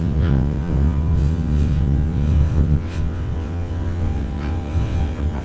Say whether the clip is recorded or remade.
remade